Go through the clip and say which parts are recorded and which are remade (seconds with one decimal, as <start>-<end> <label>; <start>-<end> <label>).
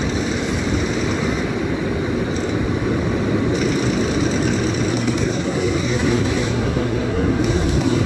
0.0-4.9 recorded; 4.9-8.1 remade